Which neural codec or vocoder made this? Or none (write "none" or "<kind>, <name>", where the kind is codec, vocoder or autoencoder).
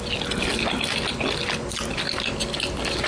none